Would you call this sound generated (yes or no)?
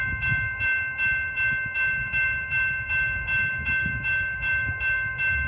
yes